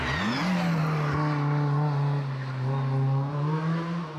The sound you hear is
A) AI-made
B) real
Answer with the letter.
B